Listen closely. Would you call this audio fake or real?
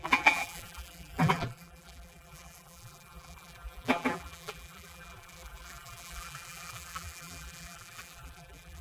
fake